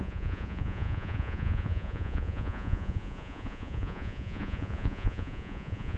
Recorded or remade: remade